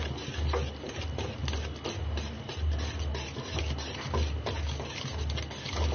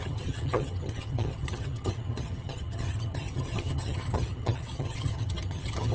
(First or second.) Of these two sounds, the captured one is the first